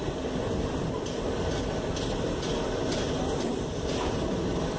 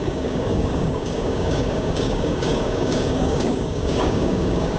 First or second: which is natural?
first